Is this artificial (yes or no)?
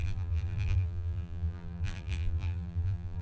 yes